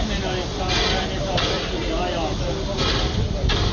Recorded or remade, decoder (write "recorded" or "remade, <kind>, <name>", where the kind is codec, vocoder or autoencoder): recorded